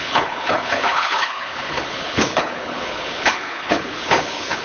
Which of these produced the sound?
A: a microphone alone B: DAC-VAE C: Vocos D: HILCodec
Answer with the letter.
D